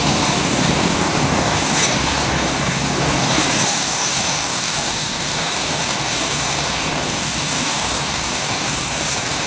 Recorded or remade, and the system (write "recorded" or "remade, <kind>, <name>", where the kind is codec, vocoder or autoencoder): remade, codec, DAC